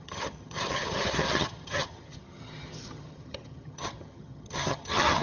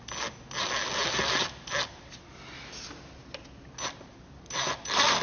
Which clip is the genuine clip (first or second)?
second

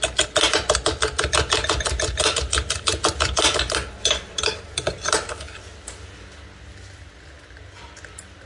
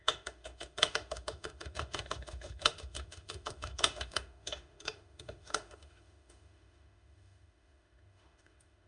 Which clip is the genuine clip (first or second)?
first